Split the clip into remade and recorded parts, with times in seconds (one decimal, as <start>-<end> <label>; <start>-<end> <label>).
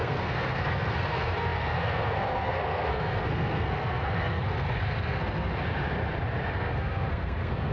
0.0-5.5 remade; 5.5-6.5 recorded; 6.5-7.7 remade